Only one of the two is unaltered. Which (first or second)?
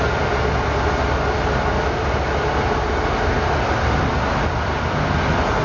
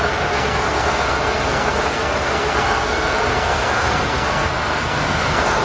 first